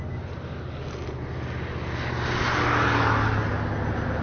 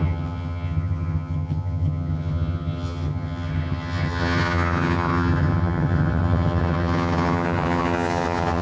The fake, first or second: second